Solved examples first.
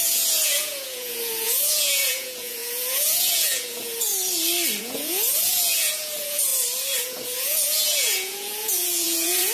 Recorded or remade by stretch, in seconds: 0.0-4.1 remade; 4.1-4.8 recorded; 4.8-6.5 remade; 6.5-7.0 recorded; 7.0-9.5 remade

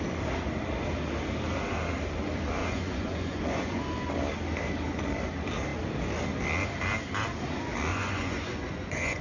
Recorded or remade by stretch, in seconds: 0.0-2.6 recorded; 2.6-3.8 remade; 3.8-7.9 recorded; 7.9-9.2 remade

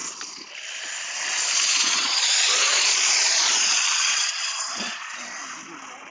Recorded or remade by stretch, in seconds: 0.0-1.7 recorded; 1.7-5.4 remade; 5.4-6.1 recorded

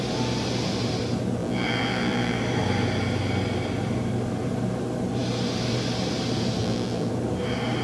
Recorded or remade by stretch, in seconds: 0.0-1.4 recorded; 1.4-2.4 remade; 2.4-6.6 recorded; 6.6-7.1 remade; 7.1-7.8 recorded

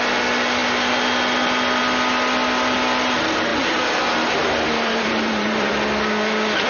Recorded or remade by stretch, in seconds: 0.0-4.4 recorded; 4.4-5.7 remade; 5.7-6.7 recorded

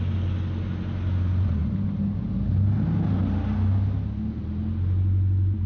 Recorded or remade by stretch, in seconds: 0.0-5.7 recorded

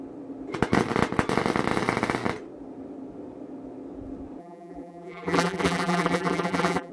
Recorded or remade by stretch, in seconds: 0.0-4.4 recorded; 4.4-6.9 remade